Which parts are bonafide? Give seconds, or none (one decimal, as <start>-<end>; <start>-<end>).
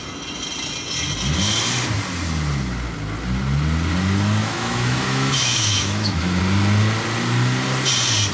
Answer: 0.0-4.4; 6.4-8.3